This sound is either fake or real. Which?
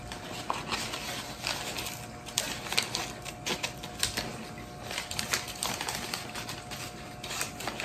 real